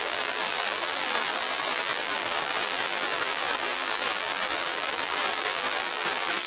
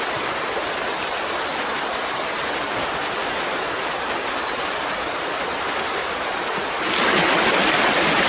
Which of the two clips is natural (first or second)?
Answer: second